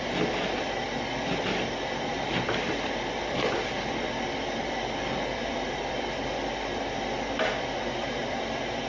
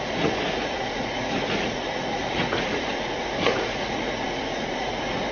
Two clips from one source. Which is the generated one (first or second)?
second